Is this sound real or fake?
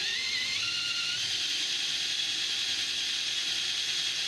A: real